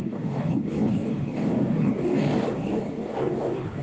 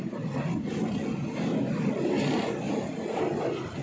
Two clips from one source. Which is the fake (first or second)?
first